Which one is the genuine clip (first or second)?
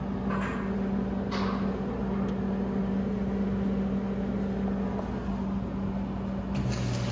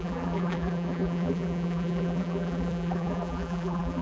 first